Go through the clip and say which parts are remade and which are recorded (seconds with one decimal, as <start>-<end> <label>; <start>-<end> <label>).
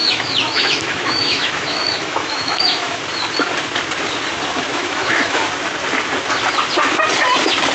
0.0-3.0 remade; 3.0-4.7 recorded; 4.7-5.5 remade; 5.5-7.7 recorded